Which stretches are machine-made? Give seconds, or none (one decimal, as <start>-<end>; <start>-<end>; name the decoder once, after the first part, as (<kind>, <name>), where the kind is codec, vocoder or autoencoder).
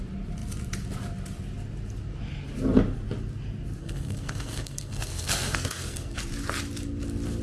3.8-6.2 (codec, SNAC)